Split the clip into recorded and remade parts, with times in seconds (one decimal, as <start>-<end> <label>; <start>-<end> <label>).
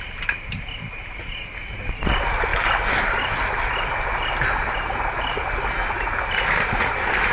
0.0-7.3 recorded